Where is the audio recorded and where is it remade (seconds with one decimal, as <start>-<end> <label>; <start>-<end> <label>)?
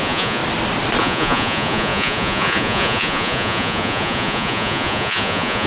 0.0-0.4 remade; 0.4-1.0 recorded; 1.0-5.7 remade